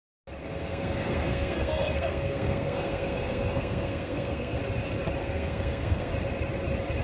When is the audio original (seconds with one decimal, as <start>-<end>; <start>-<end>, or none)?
0.0-0.4; 4.6-5.2; 6.1-7.0

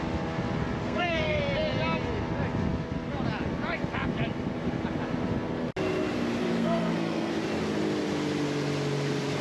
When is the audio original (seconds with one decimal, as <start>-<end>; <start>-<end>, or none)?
0.0-0.8; 1.4-6.4; 7.3-9.4

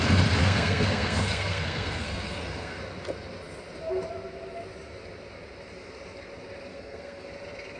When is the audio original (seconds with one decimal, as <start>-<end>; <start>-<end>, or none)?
0.0-0.4; 2.8-6.7; 7.3-7.8

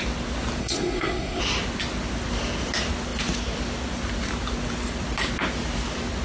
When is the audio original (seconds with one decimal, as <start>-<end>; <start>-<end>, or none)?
0.0-0.6; 1.4-6.2